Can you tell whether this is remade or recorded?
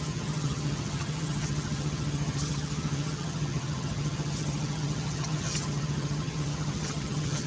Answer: remade